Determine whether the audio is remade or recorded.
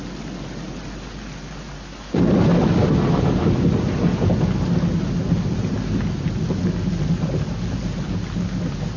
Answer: recorded